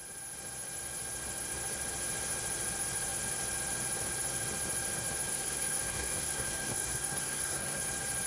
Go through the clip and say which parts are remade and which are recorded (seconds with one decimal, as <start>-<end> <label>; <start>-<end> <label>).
0.0-5.3 recorded; 5.3-7.8 remade; 7.8-8.3 recorded